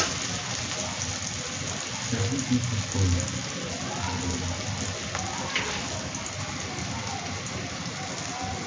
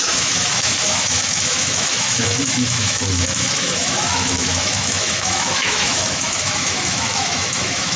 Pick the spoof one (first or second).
second